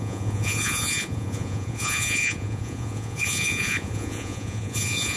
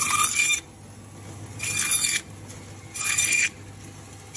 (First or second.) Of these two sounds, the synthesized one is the first